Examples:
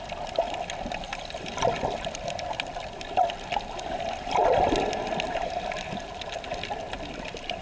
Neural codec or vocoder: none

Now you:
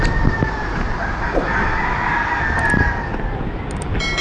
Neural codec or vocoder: none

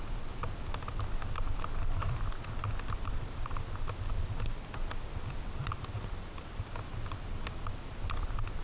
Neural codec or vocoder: none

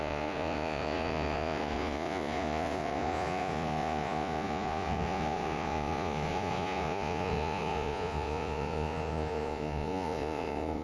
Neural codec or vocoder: vocoder, Vocos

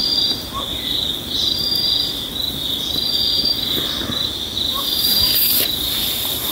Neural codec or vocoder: none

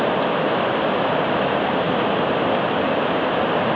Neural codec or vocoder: vocoder, BigVGAN v2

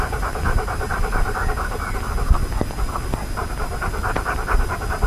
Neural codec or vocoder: none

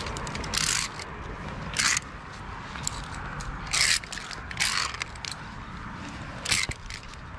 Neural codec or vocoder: none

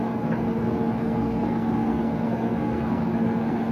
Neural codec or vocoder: codec, SNAC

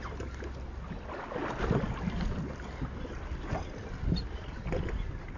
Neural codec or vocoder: none